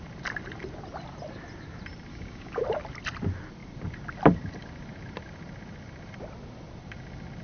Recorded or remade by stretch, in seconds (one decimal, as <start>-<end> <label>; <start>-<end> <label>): 0.0-2.1 recorded; 2.1-2.6 remade; 2.6-7.4 recorded